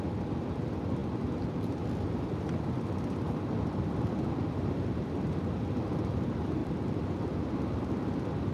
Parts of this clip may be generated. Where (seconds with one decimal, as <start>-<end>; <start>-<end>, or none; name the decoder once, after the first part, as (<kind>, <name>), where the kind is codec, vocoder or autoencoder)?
none